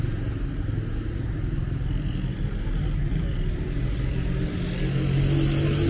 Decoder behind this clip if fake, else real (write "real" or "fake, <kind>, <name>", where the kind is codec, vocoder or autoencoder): real